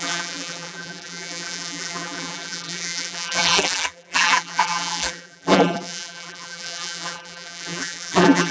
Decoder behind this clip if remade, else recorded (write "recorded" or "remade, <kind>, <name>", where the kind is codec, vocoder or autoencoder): remade, vocoder, BigVGAN v2